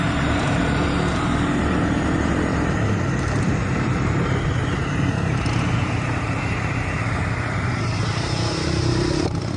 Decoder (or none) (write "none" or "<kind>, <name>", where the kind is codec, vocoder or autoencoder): vocoder, BigVGAN v2